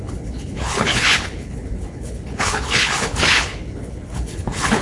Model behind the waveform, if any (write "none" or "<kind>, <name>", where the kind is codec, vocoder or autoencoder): codec, HILCodec